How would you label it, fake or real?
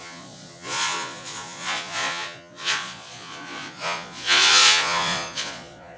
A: fake